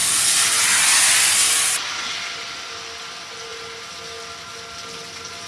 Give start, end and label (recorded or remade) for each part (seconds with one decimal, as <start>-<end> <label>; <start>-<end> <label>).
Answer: 0.0-5.5 recorded